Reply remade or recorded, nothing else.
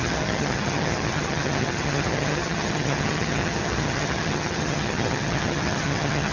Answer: remade